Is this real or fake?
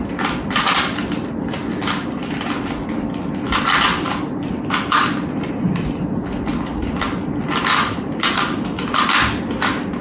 real